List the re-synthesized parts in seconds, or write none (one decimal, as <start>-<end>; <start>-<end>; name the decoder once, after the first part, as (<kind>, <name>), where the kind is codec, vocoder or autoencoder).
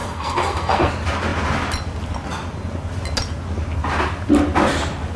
0.0-0.9 (codec, SNAC)